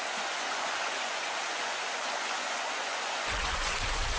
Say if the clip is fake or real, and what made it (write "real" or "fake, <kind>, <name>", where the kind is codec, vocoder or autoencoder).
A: fake, vocoder, Vocos